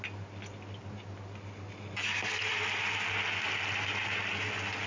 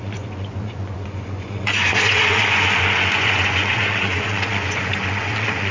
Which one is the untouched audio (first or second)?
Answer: first